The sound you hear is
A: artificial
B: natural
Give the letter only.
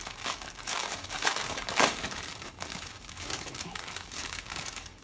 A